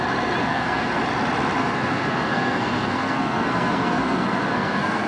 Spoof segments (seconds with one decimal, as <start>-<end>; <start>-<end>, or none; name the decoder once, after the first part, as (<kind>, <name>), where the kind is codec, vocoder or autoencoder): 0.4-1.0 (codec, SNAC); 1.6-5.1